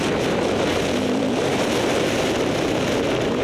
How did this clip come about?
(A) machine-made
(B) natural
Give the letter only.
B